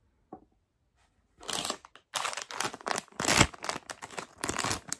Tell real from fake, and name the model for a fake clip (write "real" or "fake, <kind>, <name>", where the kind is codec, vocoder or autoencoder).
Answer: real